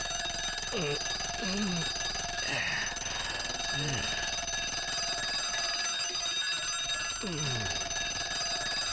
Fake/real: real